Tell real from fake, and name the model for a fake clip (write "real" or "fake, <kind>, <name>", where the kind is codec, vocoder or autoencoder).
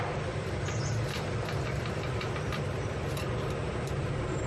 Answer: fake, vocoder, BigVGAN v2